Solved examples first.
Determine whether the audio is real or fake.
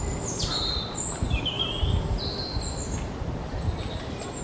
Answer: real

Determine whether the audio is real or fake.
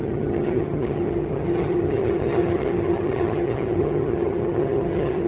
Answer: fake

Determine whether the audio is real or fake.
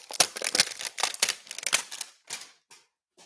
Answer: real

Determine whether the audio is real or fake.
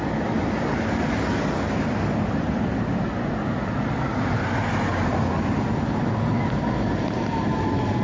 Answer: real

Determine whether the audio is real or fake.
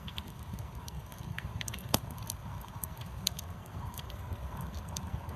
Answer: fake